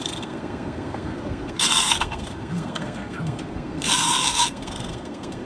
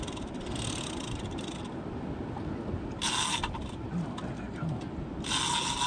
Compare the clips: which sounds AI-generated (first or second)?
first